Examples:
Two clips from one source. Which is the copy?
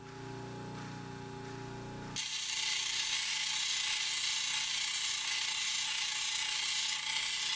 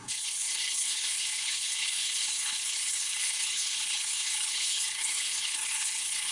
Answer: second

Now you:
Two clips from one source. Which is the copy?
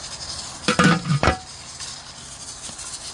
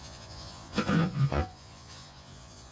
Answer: second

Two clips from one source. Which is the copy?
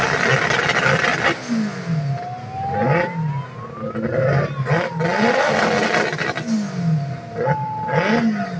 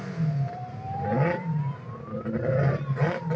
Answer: second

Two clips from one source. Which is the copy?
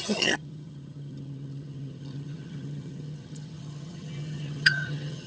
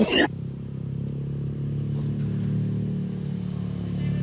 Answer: first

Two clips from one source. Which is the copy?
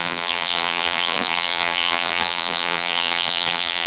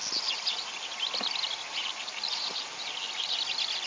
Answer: first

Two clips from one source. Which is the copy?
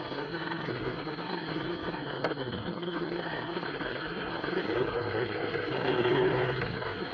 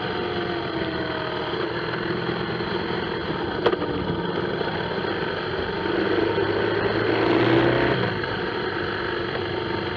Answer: first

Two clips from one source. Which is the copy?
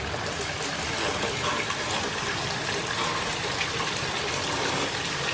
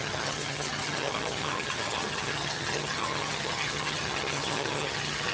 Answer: second